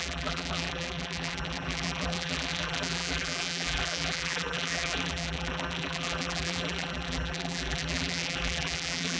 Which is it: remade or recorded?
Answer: remade